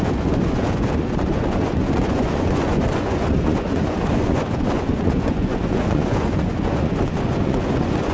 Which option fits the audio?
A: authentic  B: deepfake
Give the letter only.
B